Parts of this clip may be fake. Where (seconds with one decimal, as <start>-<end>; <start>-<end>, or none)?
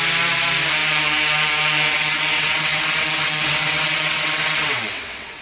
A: 1.9-5.4